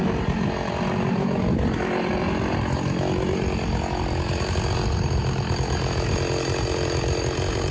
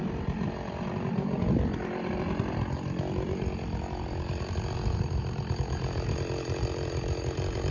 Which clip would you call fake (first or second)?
second